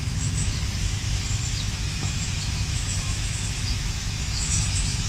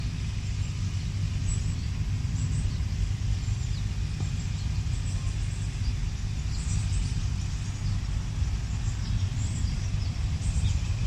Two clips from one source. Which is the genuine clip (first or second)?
second